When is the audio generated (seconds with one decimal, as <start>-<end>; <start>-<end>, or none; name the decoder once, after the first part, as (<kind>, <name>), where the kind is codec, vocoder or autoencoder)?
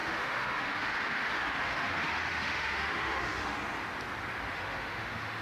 0.0-3.6 (autoencoder, DAC-VAE); 4.5-5.4